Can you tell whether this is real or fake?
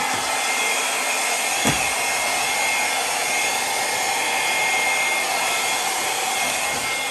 real